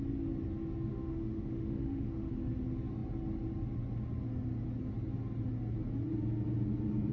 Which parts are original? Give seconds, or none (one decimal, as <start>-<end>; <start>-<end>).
0.0-0.9; 2.3-7.1